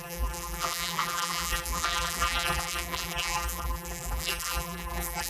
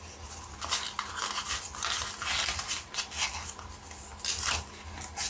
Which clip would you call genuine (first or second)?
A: second